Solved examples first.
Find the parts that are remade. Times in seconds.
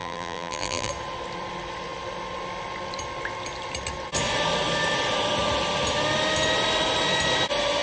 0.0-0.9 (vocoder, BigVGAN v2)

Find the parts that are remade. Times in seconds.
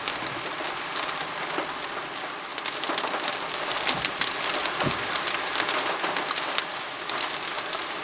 none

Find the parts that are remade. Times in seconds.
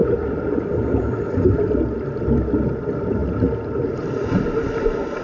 0.0-1.7 (vocoder, BigVGAN v2)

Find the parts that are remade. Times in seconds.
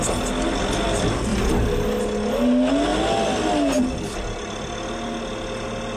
none